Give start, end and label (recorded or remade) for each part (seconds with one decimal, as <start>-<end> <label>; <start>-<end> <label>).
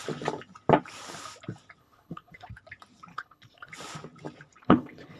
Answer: 0.0-1.8 recorded; 1.8-2.5 remade; 2.5-3.1 recorded; 3.1-3.7 remade; 3.7-4.6 recorded; 4.6-5.2 remade